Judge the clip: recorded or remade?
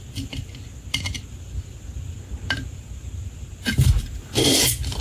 remade